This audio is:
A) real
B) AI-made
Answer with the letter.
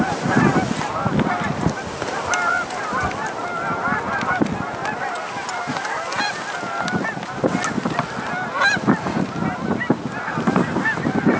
A